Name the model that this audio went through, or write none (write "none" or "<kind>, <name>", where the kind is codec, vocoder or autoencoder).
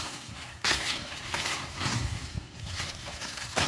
codec, SNAC